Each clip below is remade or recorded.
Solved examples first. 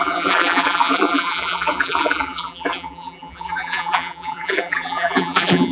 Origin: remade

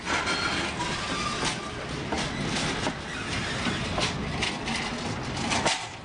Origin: recorded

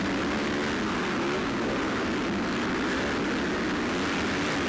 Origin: recorded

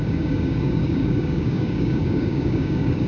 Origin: remade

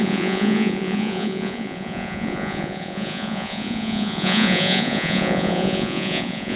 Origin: remade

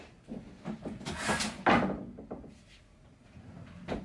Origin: recorded